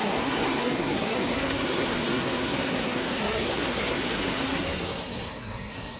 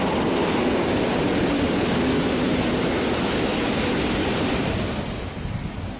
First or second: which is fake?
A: first